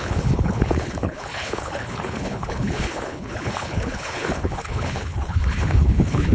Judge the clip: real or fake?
fake